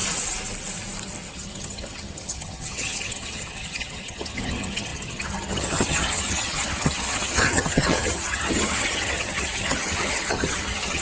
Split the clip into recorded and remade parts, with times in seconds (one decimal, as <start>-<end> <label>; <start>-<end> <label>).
0.0-1.3 recorded; 1.3-11.0 remade